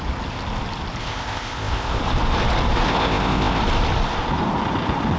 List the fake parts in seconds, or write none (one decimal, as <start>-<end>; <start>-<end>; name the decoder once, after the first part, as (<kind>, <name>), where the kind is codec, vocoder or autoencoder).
1.0-2.0 (codec, ZipCodec); 2.9-3.6